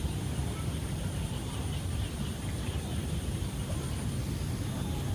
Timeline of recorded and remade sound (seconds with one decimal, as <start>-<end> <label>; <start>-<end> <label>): 0.0-0.4 recorded; 0.4-3.5 remade; 3.5-5.1 recorded